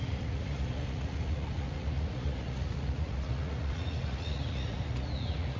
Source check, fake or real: fake